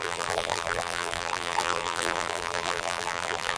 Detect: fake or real fake